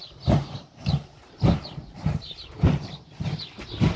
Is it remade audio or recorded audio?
remade